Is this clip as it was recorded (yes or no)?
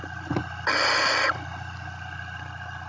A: yes